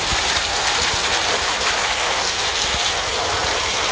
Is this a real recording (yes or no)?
yes